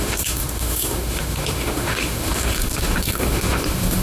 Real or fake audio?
fake